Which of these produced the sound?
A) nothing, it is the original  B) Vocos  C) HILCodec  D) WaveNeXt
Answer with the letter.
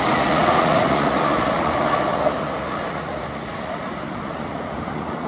B